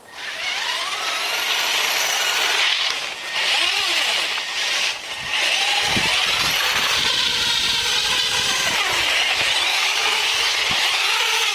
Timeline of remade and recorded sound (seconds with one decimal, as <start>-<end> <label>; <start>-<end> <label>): 0.0-9.7 recorded; 9.7-10.2 remade; 10.2-11.5 recorded